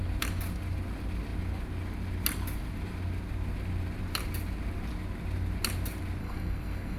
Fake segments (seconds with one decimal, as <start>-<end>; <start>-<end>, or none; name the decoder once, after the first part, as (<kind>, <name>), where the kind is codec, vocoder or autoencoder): 6.2-7.0 (codec, SNAC)